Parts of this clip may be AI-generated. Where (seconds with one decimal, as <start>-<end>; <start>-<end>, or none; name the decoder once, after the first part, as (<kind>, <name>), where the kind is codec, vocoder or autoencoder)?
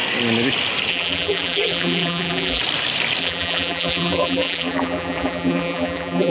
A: 0.9-2.6 (vocoder, BigVGAN v2); 3.2-6.3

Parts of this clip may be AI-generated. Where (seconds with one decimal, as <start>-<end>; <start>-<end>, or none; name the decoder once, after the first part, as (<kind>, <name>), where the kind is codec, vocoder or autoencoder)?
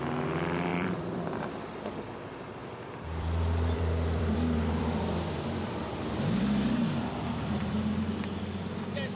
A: 0.7-1.5 (vocoder, BigVGAN v2); 2.6-6.7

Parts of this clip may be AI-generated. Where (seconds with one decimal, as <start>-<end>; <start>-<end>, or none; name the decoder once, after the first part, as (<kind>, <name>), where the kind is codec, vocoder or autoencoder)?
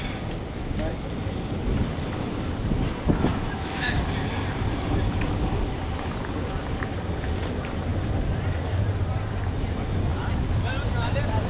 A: 3.3-4.1 (autoencoder, DAC-VAE)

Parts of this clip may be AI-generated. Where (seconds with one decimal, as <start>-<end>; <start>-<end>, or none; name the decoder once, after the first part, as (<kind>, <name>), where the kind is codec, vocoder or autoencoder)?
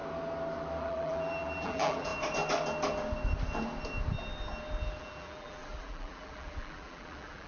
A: 0.8-2.1 (vocoder, BigVGAN v2); 5.0-7.5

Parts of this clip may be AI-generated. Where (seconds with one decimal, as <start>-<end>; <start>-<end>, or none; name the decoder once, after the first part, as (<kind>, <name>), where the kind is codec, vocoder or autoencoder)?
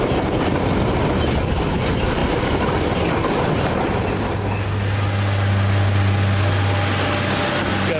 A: none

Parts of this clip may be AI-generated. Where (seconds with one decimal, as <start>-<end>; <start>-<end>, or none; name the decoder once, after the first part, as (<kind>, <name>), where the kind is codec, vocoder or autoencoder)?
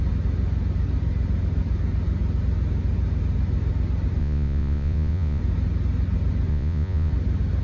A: 4.2-5.4 (vocoder, Vocos); 6.5-7.1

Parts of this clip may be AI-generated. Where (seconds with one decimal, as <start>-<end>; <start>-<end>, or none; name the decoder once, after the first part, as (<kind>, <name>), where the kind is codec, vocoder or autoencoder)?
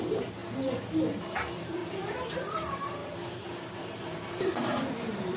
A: 0.0-0.4 (vocoder, BigVGAN v2); 1.2-1.8; 2.3-5.4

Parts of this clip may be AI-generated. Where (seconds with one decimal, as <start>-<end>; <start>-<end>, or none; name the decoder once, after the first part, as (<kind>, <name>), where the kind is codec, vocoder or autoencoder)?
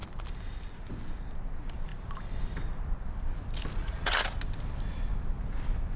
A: 3.8-4.4 (vocoder, Vocos)